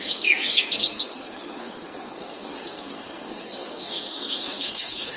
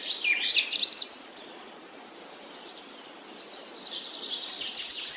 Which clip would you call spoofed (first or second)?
first